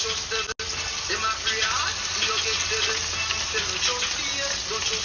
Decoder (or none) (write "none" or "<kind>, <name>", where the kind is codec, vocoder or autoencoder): none